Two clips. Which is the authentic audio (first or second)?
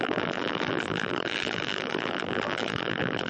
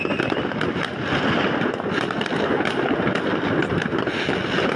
second